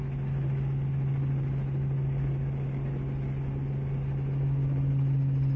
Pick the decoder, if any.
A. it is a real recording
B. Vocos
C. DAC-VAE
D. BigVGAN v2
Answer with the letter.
A